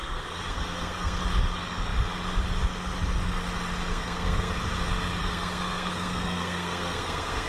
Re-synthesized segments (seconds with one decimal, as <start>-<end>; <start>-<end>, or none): 0.0-1.2; 3.9-4.5; 5.2-7.5